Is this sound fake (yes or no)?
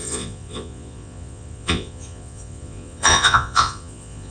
yes